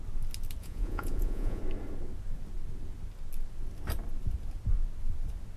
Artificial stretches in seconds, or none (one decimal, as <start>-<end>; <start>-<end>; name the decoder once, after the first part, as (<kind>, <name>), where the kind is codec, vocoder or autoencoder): 0.6-1.6 (vocoder, Vocos)